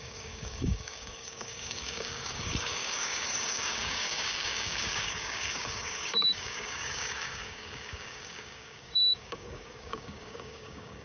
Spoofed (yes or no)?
yes